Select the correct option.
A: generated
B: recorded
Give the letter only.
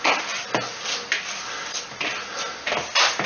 B